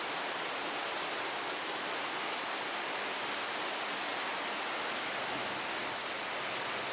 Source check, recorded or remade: recorded